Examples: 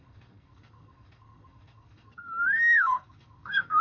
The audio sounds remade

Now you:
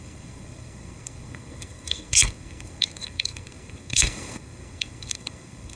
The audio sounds remade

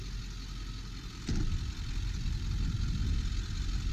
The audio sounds recorded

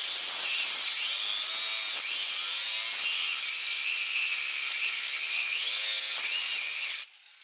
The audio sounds recorded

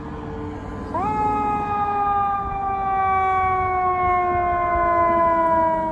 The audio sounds recorded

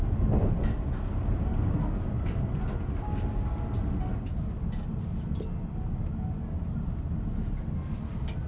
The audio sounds recorded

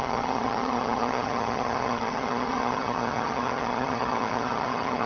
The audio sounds remade